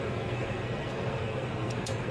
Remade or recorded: remade